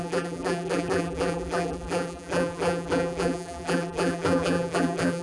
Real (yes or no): no